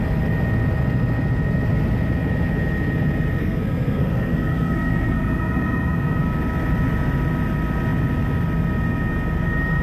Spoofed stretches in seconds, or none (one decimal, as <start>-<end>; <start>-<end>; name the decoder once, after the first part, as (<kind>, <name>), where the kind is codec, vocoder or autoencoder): 3.4-6.2 (codec, SNAC)